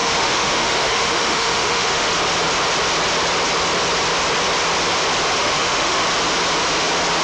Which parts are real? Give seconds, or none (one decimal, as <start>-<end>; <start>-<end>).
2.1-5.4; 6.0-7.2